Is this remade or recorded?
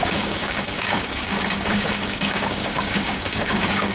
remade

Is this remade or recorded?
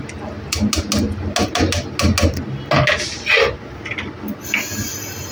recorded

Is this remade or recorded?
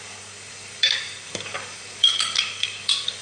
remade